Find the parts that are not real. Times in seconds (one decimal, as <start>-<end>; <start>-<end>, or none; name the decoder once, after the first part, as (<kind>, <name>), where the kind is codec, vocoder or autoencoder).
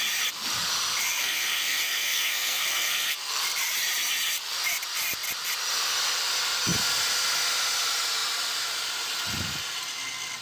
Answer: 1.2-3.4 (codec, SNAC)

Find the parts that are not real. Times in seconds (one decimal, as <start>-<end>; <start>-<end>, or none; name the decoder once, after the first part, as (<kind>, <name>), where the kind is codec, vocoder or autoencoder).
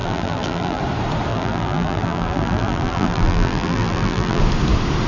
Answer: 0.0-0.8 (vocoder, BigVGAN v2); 1.3-4.4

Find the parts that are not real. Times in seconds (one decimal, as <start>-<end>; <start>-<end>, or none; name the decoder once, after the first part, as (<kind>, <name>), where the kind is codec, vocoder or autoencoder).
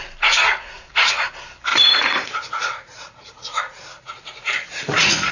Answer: 0.4-1.2 (vocoder, Vocos); 1.7-5.3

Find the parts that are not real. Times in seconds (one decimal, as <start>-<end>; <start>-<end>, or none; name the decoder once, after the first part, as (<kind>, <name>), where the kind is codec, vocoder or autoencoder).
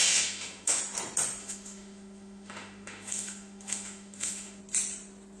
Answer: 0.0-0.8 (autoencoder, DAC-VAE); 1.4-4.6